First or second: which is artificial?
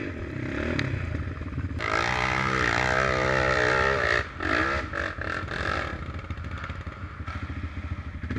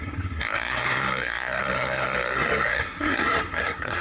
second